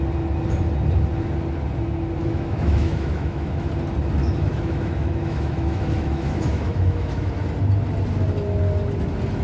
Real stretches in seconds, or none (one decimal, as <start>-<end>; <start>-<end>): 0.0-2.2; 3.7-4.2; 7.3-9.4